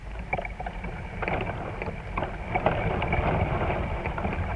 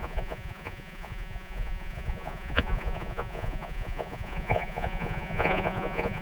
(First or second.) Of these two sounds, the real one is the first